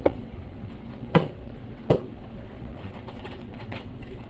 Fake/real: fake